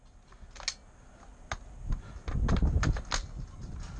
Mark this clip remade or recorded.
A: recorded